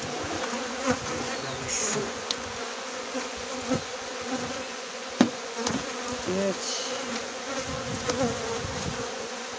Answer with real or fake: fake